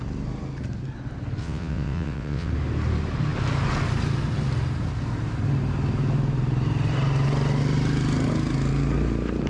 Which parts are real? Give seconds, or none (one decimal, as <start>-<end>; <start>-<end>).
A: 0.0-1.4; 2.5-9.5